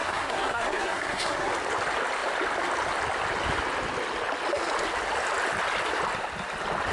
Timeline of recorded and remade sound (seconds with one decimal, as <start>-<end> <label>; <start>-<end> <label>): 0.0-1.5 remade; 1.5-6.9 recorded